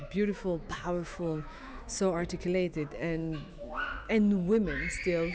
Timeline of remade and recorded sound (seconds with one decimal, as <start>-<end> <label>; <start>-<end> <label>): 0.0-1.9 remade; 1.9-2.7 recorded; 2.7-4.1 remade; 4.1-5.3 recorded